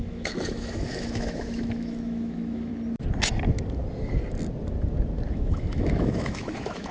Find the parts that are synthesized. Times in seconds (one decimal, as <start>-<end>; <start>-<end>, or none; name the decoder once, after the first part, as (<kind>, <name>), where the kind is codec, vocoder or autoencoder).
0.0-2.7 (autoencoder, DAC-VAE); 5.3-6.9